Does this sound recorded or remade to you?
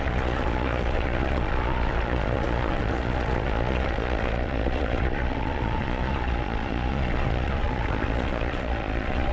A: remade